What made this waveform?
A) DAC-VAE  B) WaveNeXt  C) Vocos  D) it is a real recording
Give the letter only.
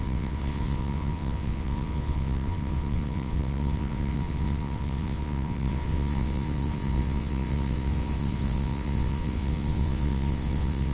B